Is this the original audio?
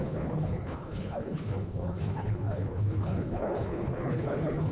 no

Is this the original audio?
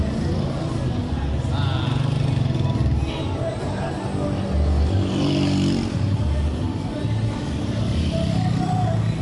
yes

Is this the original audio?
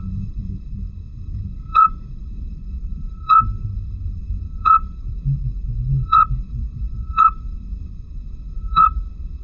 no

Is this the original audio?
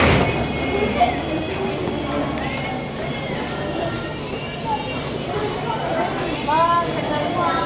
yes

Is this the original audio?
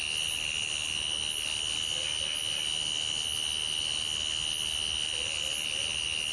yes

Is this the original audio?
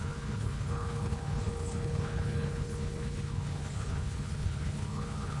no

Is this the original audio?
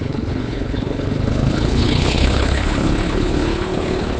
no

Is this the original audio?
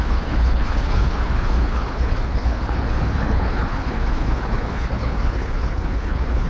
no